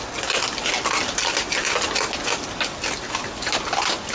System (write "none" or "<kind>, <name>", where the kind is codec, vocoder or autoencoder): none